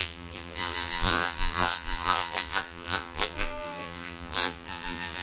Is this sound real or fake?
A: fake